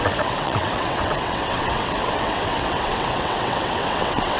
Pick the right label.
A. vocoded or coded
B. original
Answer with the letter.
A